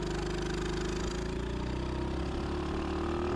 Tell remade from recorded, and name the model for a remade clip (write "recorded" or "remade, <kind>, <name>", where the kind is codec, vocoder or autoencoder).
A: recorded